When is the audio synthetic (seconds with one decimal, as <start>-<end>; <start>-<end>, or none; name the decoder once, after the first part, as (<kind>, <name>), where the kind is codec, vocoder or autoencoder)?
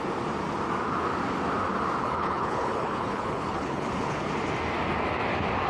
2.0-4.3 (codec, HILCodec)